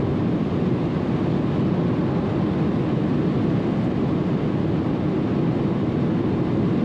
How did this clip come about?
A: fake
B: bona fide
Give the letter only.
B